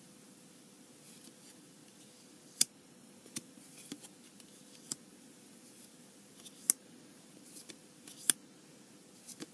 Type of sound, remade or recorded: recorded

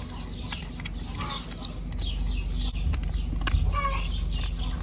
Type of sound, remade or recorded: recorded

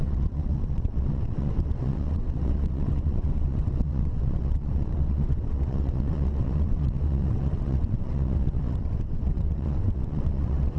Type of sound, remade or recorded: remade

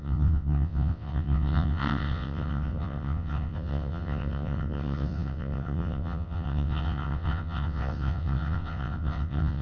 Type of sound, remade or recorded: remade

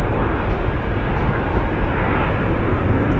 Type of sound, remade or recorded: recorded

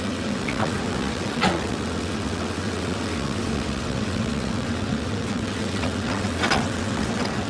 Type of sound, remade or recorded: remade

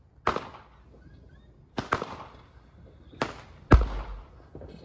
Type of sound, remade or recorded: recorded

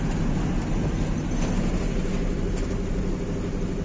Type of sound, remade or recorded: recorded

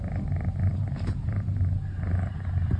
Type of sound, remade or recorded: recorded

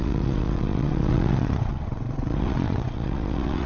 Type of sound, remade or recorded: remade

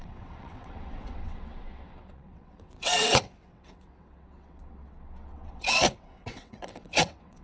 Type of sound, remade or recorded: remade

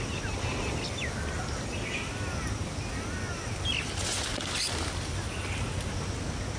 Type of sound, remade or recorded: recorded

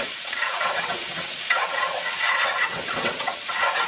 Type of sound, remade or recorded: remade